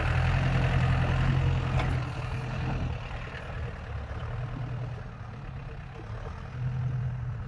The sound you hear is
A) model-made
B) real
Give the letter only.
B